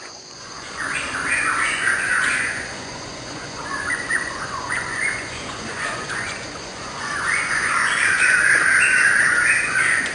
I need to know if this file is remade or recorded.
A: remade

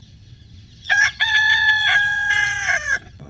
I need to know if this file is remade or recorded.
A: remade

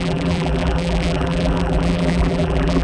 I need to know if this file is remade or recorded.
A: remade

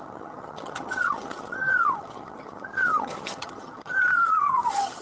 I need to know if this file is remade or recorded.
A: remade